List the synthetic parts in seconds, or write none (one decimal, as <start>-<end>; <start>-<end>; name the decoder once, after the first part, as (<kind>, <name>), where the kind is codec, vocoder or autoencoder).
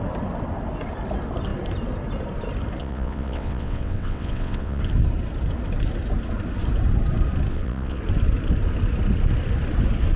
2.8-4.8 (vocoder, WaveNeXt); 7.5-8.0